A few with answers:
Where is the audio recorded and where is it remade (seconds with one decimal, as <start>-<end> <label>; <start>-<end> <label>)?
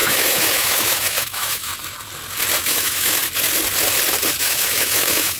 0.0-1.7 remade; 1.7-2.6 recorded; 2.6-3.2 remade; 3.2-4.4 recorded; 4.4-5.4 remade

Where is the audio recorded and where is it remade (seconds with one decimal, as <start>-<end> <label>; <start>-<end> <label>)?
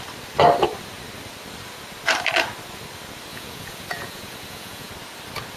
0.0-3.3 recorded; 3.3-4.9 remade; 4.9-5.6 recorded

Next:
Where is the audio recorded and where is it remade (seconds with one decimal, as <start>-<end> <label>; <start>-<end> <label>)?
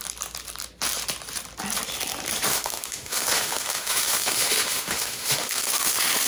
0.0-2.5 recorded; 2.5-6.3 remade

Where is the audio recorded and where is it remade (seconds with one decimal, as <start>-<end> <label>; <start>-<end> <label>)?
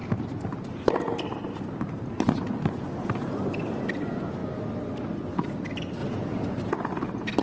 0.0-7.4 recorded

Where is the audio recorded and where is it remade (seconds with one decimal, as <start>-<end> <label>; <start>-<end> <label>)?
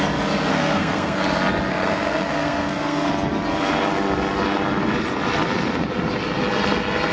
0.0-0.5 recorded; 0.5-1.2 remade; 1.2-1.7 recorded; 1.7-3.1 remade; 3.1-7.1 recorded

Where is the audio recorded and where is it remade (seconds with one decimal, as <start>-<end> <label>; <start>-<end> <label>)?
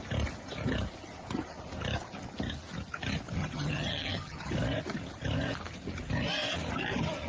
0.0-3.4 recorded; 3.4-4.5 remade; 4.5-7.3 recorded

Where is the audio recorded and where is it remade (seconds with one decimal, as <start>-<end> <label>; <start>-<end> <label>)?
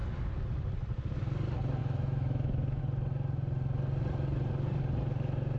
0.0-1.8 recorded; 1.8-2.8 remade; 2.8-5.6 recorded